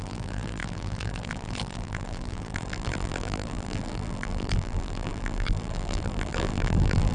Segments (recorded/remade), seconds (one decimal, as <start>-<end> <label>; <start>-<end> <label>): 0.0-7.1 remade